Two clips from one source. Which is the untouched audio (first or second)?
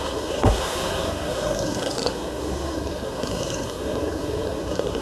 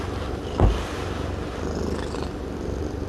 second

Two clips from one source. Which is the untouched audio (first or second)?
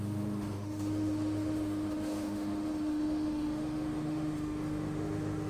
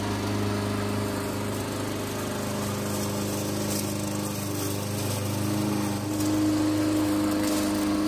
second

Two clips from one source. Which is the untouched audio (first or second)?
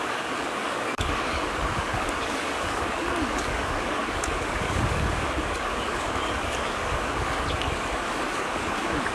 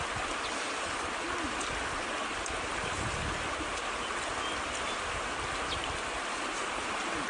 second